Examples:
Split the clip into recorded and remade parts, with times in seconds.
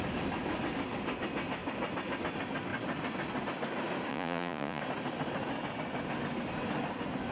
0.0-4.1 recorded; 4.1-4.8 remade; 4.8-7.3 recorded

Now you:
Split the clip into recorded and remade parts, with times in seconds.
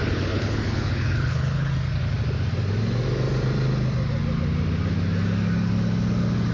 0.0-1.7 remade; 1.7-6.5 recorded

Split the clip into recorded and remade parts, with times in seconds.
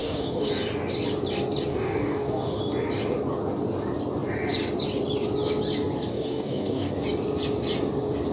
0.0-0.5 remade; 0.5-1.7 recorded; 1.7-2.6 remade; 2.6-6.1 recorded; 6.1-6.9 remade; 6.9-8.3 recorded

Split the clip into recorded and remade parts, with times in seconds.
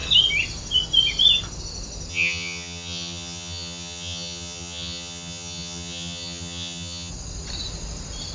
0.0-2.1 recorded; 2.1-7.1 remade; 7.1-8.3 recorded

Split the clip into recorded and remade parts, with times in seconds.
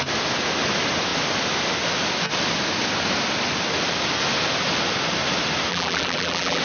0.0-5.7 recorded; 5.7-6.6 remade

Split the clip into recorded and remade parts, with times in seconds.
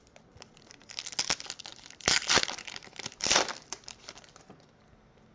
0.0-1.7 recorded; 1.7-5.3 remade